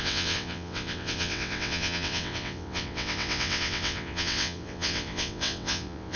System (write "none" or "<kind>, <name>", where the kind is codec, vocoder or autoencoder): vocoder, WaveNeXt